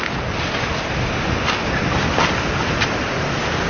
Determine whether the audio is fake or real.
real